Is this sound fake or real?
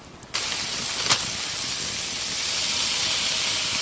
fake